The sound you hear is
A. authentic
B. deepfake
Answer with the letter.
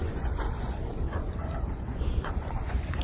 B